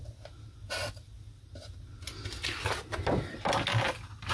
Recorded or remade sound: recorded